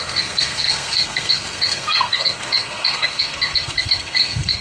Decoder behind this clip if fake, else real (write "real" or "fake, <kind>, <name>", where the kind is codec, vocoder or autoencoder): fake, codec, SNAC